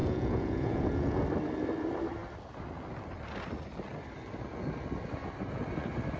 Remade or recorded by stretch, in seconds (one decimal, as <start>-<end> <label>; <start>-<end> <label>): 0.0-1.2 remade; 1.2-6.2 recorded